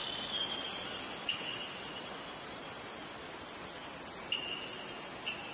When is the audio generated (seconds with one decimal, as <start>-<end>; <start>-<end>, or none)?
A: none